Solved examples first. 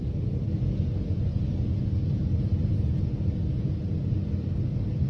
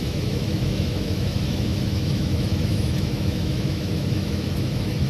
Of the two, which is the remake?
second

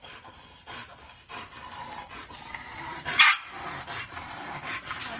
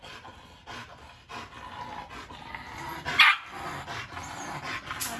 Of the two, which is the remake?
first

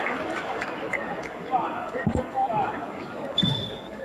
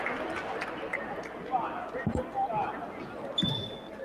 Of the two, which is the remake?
first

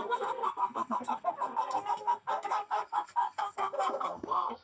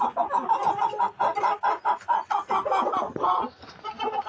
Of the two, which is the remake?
first